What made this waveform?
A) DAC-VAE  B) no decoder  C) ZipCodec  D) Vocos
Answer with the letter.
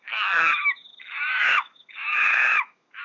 A